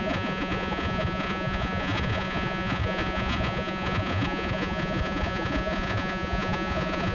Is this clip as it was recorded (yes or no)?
no